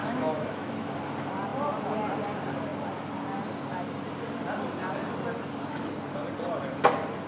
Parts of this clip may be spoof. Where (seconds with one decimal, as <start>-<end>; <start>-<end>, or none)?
0.0-0.9